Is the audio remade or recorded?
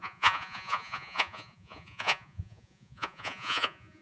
remade